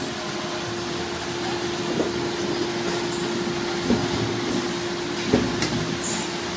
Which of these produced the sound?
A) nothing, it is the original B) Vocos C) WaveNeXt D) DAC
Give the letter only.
A